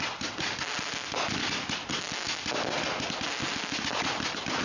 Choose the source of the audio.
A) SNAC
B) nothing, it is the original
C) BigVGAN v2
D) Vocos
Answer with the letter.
B